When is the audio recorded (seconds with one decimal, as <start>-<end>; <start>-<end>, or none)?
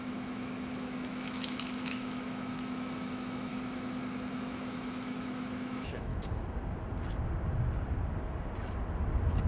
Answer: 3.5-4.3; 6.1-9.5